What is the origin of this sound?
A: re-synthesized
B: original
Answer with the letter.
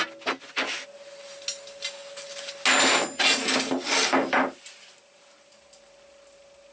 B